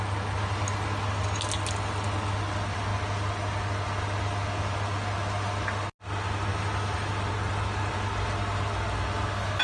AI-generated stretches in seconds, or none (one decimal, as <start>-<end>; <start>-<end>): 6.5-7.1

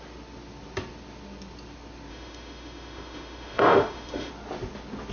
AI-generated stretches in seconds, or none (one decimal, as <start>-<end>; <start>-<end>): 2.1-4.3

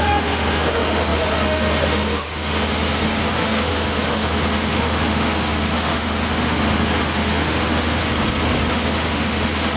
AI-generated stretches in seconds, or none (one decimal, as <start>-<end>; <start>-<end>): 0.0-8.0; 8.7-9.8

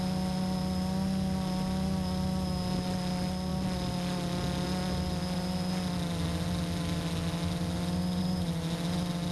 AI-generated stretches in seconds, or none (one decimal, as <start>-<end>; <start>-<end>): none

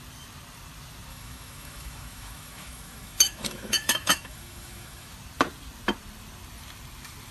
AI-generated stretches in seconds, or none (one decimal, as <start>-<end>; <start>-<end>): 1.1-5.1

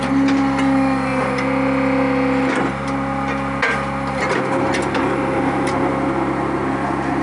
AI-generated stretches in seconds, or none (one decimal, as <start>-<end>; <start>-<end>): none